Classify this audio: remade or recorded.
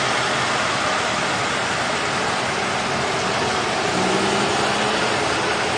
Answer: recorded